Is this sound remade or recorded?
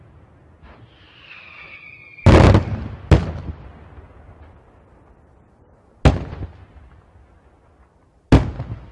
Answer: recorded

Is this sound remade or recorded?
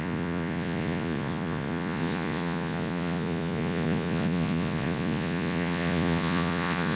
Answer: remade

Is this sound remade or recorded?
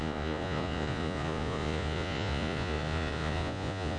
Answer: remade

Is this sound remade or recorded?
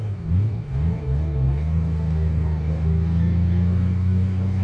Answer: remade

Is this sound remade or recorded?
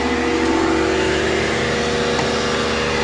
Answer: recorded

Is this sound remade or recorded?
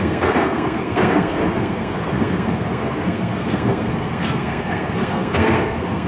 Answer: remade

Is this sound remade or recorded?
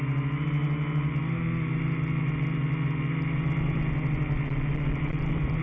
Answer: recorded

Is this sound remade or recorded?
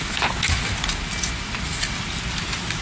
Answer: recorded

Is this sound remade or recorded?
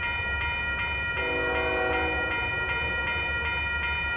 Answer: recorded